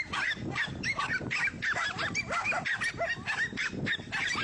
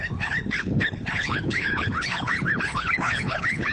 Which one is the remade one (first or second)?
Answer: second